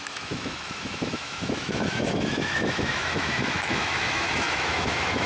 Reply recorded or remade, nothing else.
remade